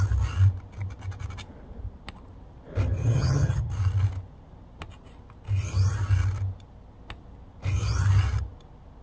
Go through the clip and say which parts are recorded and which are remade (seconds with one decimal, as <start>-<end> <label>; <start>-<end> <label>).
0.0-3.0 recorded; 3.0-3.7 remade; 3.7-9.0 recorded